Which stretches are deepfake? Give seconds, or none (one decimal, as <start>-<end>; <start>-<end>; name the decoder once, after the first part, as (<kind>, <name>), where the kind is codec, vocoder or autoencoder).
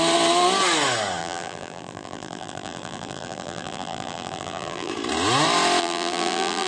1.2-4.9 (vocoder, BigVGAN v2); 5.8-6.7